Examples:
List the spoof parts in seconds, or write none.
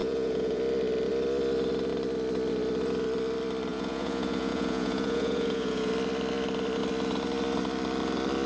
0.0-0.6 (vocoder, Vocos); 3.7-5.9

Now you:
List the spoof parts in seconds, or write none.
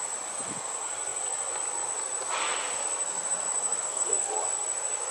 3.8-4.3 (codec, SNAC)